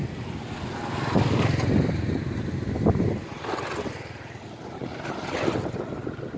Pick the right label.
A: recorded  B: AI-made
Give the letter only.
A